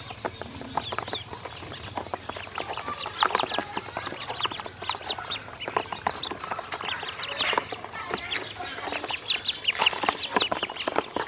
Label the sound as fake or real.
real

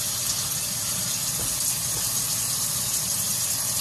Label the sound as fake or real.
real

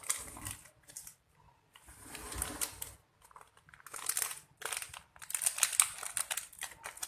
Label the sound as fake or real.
real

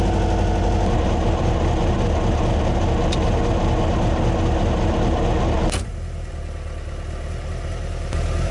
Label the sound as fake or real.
real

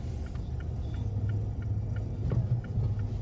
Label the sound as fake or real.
real